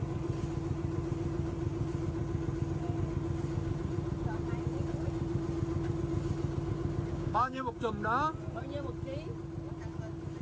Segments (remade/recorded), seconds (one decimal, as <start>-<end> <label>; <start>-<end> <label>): 0.0-7.1 recorded; 7.1-7.9 remade; 7.9-10.4 recorded

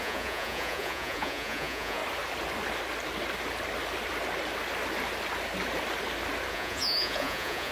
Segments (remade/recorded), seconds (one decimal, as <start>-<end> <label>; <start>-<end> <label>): 0.0-2.0 remade; 2.0-6.5 recorded; 6.5-7.7 remade